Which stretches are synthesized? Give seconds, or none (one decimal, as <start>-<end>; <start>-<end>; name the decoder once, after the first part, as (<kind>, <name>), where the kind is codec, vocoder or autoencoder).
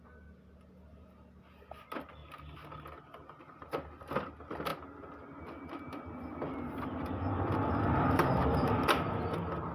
none